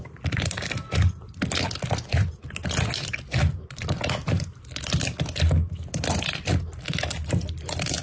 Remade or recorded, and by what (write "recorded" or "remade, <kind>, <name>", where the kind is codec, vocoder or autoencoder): recorded